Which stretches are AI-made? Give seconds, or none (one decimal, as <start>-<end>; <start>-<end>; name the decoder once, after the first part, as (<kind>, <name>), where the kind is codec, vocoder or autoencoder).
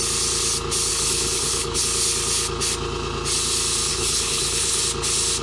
0.9-1.8 (codec, HILCodec); 3.9-4.8